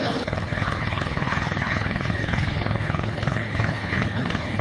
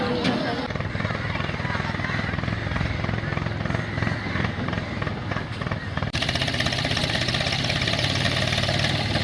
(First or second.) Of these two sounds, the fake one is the first